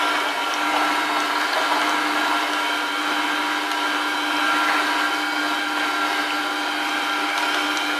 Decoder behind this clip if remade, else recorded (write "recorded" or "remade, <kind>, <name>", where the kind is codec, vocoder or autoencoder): recorded